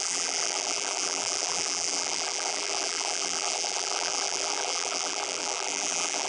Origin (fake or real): fake